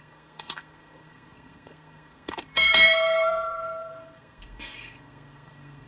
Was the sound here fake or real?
fake